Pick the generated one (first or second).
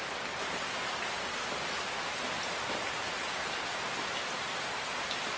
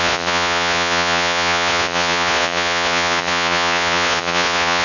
second